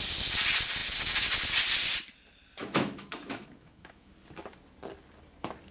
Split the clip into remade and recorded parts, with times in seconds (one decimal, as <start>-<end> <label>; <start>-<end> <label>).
0.0-2.6 recorded; 2.6-4.1 remade; 4.1-5.7 recorded